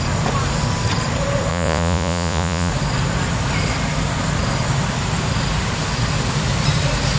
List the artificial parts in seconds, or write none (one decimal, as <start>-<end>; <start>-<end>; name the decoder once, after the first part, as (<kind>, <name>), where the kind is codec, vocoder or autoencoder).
1.5-2.7 (vocoder, Vocos)